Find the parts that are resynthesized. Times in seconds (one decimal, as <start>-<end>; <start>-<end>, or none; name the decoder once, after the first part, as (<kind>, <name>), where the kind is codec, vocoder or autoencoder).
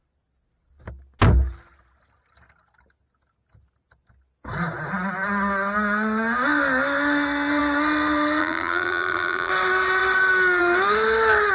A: 8.4-9.5 (vocoder, BigVGAN v2)